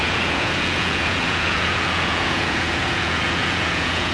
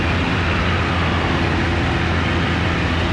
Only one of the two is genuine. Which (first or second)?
second